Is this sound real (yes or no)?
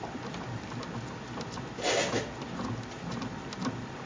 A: yes